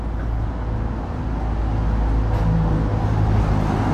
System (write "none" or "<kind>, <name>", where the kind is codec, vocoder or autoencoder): none